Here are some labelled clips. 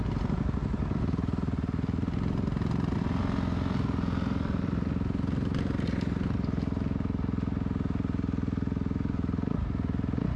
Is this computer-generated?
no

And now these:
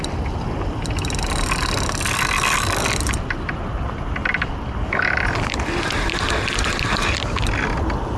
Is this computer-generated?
no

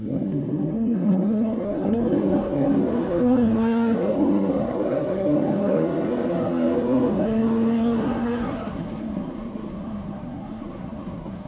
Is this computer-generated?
yes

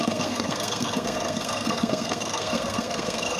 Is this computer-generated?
yes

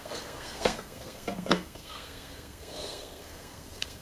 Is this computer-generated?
yes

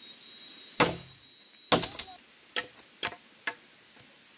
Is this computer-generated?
no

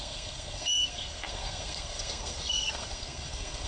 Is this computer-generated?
yes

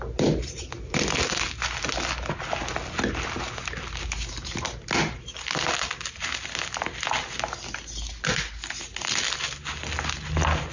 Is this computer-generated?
no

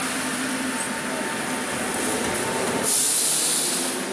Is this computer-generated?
no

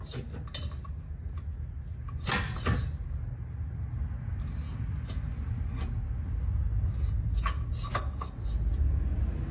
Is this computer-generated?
no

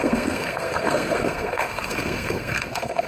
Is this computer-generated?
yes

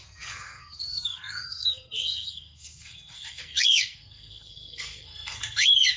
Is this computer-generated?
yes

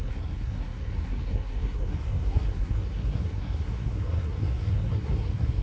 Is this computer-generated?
yes